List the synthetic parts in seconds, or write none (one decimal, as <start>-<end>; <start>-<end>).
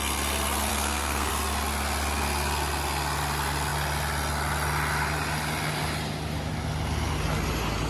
0.7-1.3